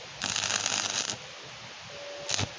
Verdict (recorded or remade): recorded